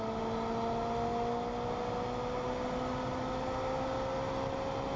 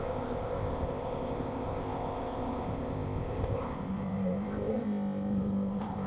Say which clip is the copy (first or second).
second